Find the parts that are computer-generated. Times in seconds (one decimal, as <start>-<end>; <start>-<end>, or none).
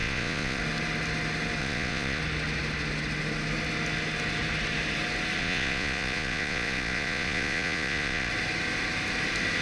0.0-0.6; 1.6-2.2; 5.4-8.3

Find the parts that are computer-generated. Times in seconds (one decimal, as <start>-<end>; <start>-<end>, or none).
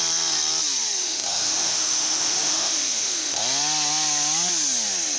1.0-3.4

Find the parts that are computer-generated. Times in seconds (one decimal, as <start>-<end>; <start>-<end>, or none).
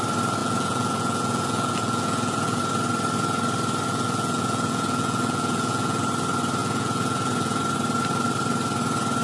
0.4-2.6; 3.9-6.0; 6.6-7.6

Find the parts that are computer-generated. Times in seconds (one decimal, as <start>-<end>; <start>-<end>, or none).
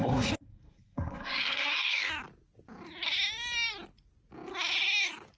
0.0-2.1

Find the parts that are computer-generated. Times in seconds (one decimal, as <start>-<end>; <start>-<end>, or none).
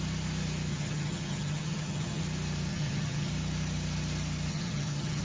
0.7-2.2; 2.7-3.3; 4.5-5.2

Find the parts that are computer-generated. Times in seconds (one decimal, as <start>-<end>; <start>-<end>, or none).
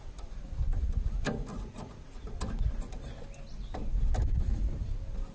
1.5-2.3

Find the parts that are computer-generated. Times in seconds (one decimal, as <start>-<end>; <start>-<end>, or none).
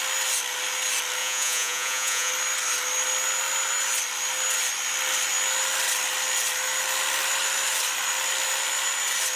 1.2-2.3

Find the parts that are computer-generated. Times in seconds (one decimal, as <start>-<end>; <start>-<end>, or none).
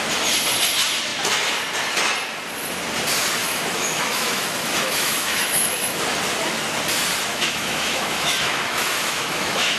3.4-6.0; 7.3-9.8